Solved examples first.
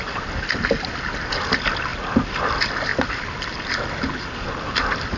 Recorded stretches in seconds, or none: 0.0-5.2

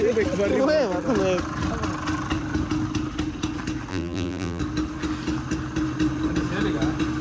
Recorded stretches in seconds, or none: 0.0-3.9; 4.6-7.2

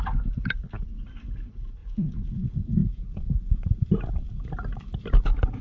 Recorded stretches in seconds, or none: 0.0-1.8; 2.3-2.8; 3.6-5.6